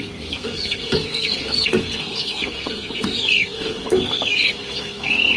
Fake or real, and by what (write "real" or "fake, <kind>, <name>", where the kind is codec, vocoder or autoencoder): fake, codec, SNAC